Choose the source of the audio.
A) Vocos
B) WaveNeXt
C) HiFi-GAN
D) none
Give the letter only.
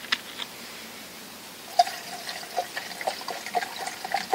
D